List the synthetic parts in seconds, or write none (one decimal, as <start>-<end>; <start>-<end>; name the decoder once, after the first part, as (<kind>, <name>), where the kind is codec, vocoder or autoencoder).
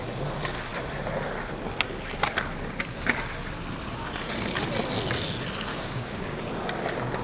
5.7-6.4 (codec, DAC)